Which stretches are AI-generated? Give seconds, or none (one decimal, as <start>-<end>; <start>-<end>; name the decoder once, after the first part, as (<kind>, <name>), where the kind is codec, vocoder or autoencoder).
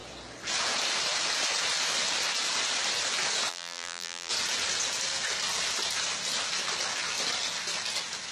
3.5-4.3 (vocoder, BigVGAN v2)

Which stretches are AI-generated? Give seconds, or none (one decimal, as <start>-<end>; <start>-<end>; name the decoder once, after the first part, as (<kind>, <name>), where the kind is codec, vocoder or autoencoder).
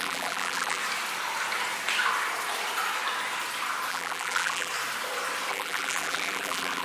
0.0-0.8 (vocoder, BigVGAN v2); 3.9-4.7; 5.5-6.8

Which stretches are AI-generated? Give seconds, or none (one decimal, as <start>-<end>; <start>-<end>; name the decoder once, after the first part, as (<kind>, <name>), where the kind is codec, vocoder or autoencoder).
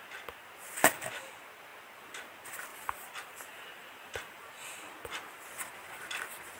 2.7-4.5 (vocoder, BigVGAN v2)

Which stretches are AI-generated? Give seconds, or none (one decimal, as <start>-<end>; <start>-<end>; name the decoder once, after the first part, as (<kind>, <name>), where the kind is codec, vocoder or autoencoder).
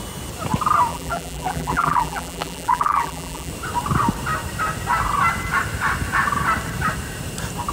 0.9-3.5 (vocoder, BigVGAN v2)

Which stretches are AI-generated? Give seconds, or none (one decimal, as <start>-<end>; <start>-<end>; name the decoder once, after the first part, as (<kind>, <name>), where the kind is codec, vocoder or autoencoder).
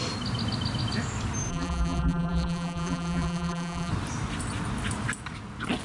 1.5-3.9 (vocoder, BigVGAN v2)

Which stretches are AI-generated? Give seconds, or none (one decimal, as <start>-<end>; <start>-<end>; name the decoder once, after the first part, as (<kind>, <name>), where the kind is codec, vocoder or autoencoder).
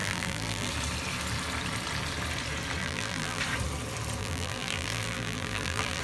0.0-0.7 (vocoder, BigVGAN v2); 2.8-3.4; 4.2-6.0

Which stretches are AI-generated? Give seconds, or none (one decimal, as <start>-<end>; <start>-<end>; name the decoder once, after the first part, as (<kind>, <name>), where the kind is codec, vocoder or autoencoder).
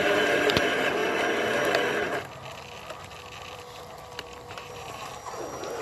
0.0-1.0 (vocoder, BigVGAN v2); 4.5-5.1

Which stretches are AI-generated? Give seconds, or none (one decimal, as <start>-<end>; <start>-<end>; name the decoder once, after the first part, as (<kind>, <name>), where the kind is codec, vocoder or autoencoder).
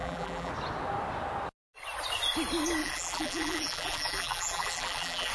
0.0-0.5 (vocoder, BigVGAN v2); 2.8-5.3